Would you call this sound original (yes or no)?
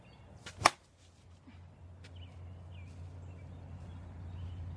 yes